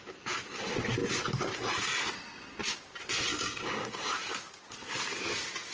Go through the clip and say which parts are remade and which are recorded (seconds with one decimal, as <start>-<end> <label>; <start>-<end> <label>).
0.0-3.3 recorded; 3.3-4.1 remade; 4.1-5.7 recorded